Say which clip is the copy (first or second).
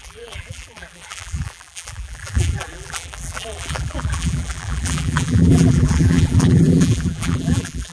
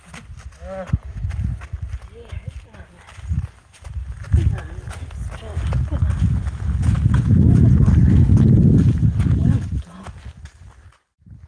first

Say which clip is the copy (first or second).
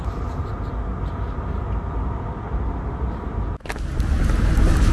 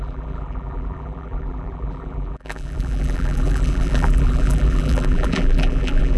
second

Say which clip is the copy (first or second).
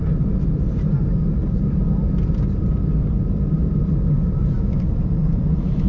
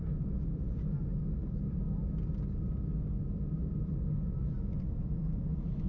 first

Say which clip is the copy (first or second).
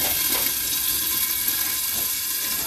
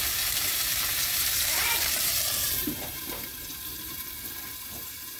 second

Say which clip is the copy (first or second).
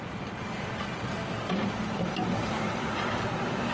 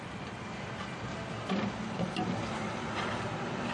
first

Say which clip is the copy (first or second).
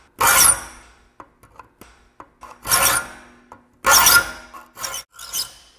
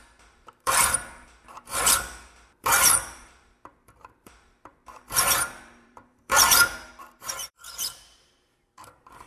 second